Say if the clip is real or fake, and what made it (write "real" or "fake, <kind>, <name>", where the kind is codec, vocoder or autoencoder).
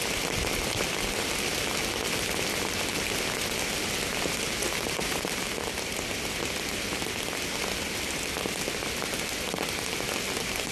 real